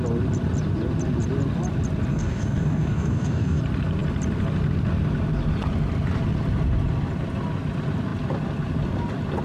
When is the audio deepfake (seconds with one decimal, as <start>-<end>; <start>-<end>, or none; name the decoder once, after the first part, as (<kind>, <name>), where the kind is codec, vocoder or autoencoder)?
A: 2.1-3.6 (codec, DAC)